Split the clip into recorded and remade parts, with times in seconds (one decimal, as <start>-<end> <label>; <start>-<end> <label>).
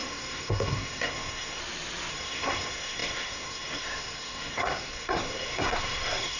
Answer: 0.0-1.6 remade; 1.6-2.1 recorded; 2.1-6.4 remade